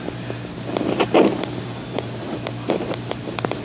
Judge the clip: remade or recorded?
recorded